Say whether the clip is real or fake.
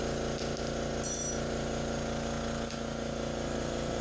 real